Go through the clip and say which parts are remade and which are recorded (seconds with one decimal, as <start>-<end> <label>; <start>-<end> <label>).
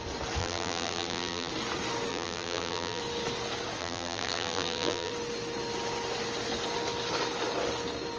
0.0-0.4 recorded; 0.4-1.5 remade; 1.5-2.1 recorded; 2.1-3.0 remade; 3.0-3.8 recorded; 3.8-5.1 remade; 5.1-8.2 recorded